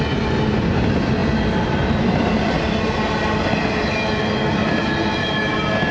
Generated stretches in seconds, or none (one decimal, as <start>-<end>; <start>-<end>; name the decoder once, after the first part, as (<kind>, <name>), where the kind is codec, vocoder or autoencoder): none